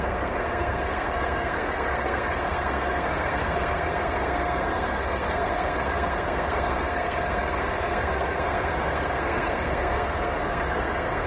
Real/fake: fake